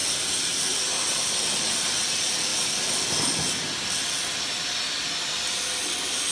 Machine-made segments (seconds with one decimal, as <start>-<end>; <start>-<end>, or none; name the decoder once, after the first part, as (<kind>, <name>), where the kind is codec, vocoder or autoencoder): none